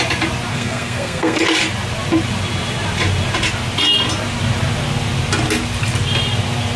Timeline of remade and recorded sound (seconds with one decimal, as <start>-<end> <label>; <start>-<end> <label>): 0.0-0.5 recorded; 0.5-1.4 remade; 1.4-6.8 recorded